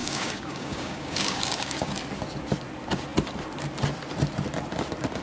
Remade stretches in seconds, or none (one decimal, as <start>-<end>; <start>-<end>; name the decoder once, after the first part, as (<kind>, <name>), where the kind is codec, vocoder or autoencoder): 0.0-1.9 (codec, DAC)